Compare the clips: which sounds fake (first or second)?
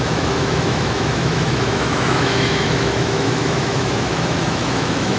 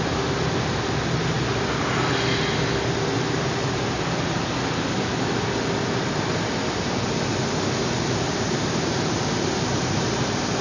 first